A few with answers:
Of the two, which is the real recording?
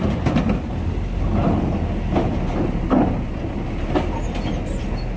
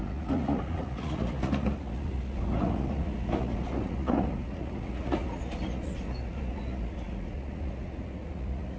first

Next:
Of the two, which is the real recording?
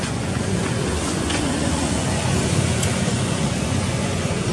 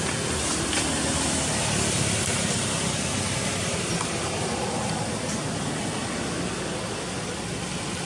second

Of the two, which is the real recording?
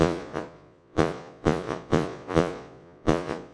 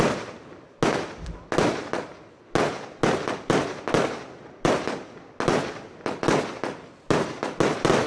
second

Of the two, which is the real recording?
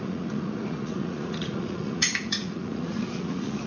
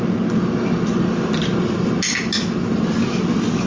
second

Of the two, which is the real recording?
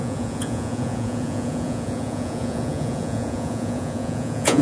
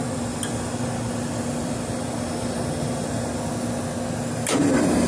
second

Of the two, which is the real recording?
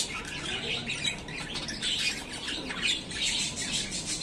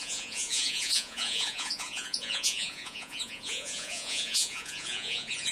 first